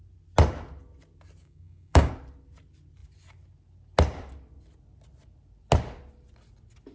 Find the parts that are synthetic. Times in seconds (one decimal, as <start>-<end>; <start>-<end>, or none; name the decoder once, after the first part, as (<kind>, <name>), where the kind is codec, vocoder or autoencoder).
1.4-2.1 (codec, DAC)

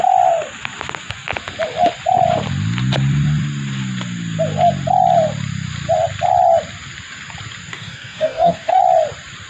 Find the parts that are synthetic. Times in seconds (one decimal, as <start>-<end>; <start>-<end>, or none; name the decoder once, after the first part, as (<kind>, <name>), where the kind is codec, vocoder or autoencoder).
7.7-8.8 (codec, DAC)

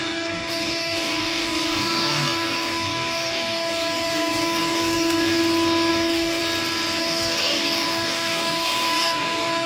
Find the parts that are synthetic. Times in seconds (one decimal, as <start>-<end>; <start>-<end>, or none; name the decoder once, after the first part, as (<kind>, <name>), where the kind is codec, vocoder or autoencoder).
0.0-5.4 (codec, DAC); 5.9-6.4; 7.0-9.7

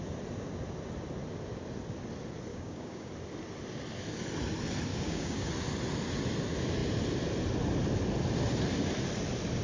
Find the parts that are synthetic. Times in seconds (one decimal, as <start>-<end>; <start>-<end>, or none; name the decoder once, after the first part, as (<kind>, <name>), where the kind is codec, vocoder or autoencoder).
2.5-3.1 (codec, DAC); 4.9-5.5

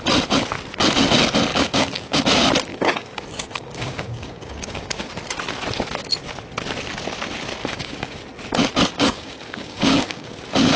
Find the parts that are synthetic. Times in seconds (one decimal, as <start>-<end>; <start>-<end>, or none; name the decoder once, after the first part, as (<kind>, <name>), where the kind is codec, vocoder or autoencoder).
1.5-2.2 (codec, DAC); 2.7-5.1; 7.6-8.2; 8.9-10.3

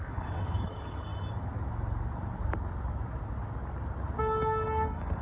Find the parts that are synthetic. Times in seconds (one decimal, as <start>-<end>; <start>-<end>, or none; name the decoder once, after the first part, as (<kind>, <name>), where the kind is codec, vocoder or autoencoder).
0.0-1.1 (codec, DAC); 4.2-5.2

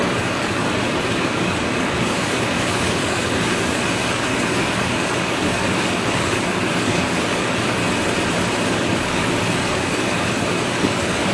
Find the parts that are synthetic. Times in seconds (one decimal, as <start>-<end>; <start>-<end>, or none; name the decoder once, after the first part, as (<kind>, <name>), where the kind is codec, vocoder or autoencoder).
0.0-7.8 (codec, DAC); 8.6-11.3